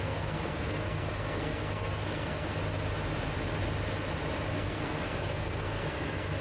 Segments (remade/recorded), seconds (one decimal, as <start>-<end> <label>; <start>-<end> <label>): 0.0-2.6 remade; 2.6-4.5 recorded; 4.5-6.4 remade